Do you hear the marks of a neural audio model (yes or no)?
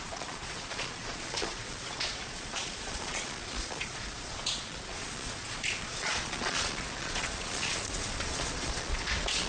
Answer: yes